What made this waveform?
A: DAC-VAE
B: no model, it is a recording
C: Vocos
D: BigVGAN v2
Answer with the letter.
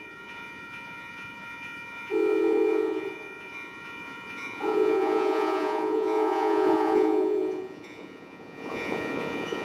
C